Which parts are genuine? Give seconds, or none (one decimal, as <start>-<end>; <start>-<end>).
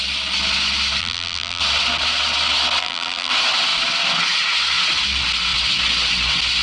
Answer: 0.0-1.0; 1.6-2.8; 3.3-6.6